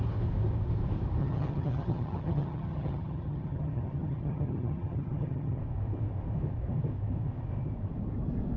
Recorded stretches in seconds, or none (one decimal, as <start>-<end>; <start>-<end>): 0.0-1.2; 5.6-8.6